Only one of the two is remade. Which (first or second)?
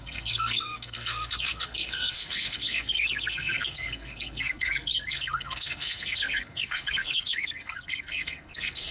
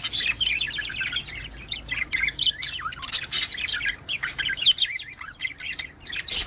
first